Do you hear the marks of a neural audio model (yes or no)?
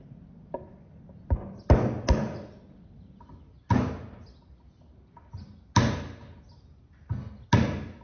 no